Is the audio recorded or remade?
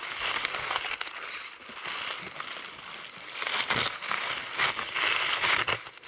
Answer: recorded